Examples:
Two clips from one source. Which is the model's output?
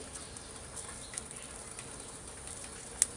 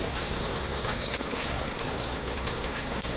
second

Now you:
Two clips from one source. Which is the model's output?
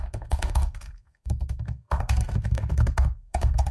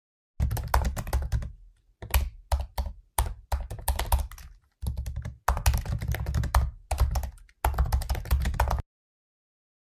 first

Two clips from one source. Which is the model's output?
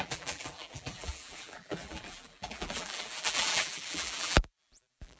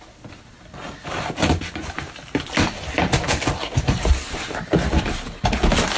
first